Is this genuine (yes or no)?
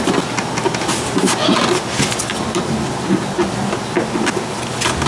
yes